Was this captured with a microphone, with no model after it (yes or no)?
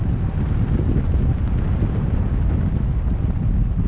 yes